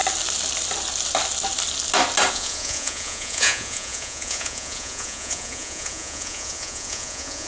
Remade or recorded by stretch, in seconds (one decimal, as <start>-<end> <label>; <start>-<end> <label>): 0.0-2.3 recorded; 2.3-7.5 remade